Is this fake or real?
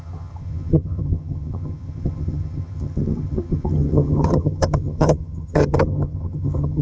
fake